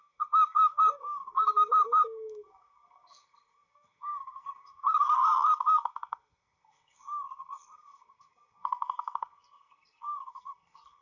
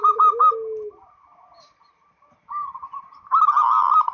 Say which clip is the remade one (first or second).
first